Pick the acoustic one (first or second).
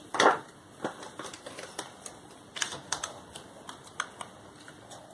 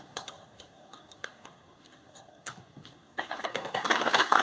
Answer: first